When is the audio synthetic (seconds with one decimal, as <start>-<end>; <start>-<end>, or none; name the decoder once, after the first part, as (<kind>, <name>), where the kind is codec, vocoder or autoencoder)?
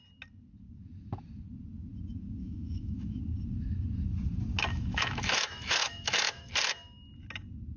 2.4-3.2 (autoencoder, DAC-VAE); 4.7-6.5